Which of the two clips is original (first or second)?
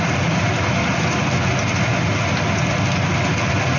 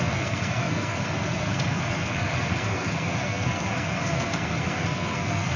first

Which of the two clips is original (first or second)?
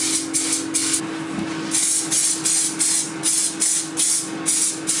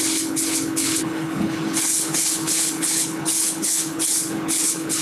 first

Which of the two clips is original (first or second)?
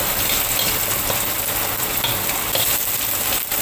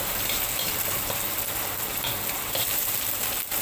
first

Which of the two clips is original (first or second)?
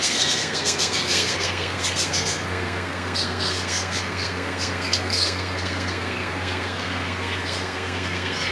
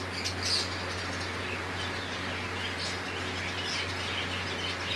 second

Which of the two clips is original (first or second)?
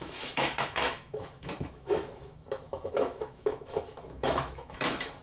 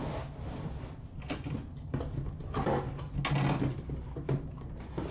second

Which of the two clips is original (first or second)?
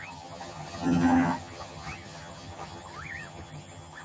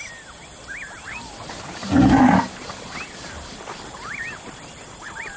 second